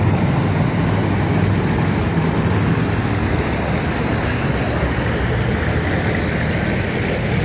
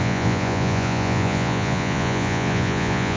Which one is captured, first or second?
first